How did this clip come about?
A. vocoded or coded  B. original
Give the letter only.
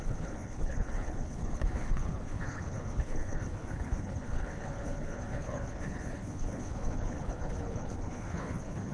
A